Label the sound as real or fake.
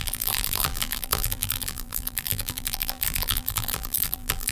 fake